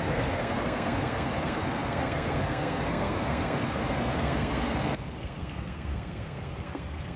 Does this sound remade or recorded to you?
remade